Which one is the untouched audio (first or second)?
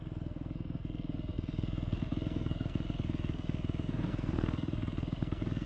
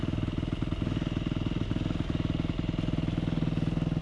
second